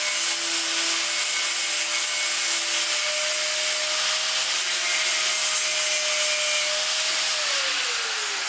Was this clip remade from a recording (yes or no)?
no